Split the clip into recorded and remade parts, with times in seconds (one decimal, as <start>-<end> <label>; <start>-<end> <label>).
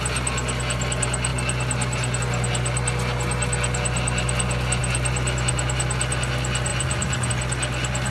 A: 0.0-6.7 recorded; 6.7-7.3 remade; 7.3-8.1 recorded